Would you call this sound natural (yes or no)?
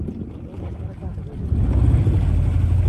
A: yes